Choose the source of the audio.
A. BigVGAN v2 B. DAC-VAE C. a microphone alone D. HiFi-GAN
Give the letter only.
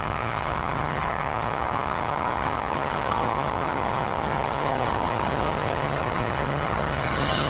D